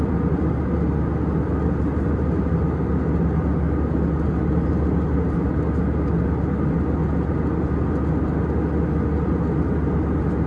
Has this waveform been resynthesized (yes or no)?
no